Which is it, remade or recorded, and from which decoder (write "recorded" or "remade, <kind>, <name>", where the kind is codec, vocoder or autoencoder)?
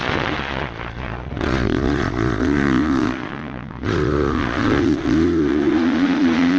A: remade, vocoder, Vocos